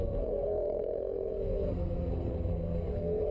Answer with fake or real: fake